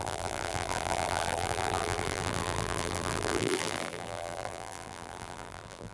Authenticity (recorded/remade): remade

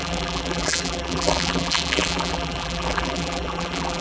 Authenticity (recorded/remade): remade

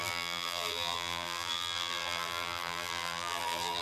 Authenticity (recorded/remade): remade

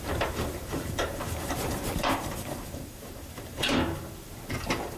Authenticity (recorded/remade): remade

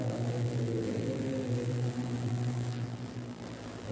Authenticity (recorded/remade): remade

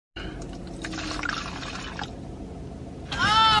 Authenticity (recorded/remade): recorded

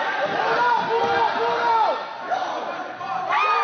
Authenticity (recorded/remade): recorded